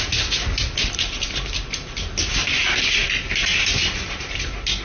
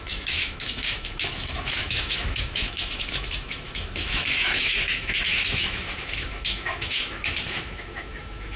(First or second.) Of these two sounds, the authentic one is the first